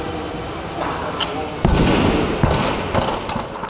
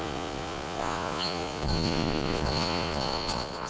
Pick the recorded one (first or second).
first